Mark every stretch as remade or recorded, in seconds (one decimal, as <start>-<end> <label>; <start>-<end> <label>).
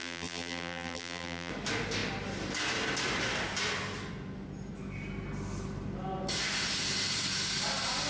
0.0-1.5 remade; 1.5-8.1 recorded